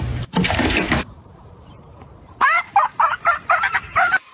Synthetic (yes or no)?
yes